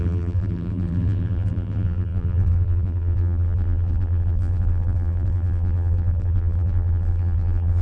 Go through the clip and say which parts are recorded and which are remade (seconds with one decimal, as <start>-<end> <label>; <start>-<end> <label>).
0.0-7.8 remade